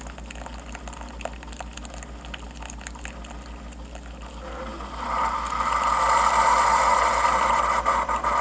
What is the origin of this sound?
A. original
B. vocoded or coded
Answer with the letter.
A